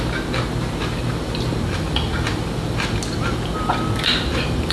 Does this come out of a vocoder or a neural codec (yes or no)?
no